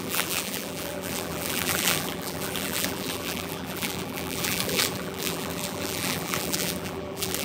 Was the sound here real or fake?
fake